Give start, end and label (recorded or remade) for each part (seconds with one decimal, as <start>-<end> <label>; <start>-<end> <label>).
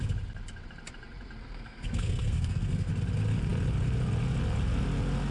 0.0-1.4 recorded; 1.4-2.9 remade; 2.9-5.3 recorded